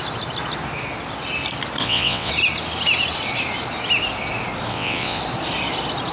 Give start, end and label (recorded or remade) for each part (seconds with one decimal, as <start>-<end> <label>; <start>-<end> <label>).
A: 0.0-1.8 recorded; 1.8-2.3 remade; 2.3-4.7 recorded; 4.7-5.2 remade; 5.2-6.1 recorded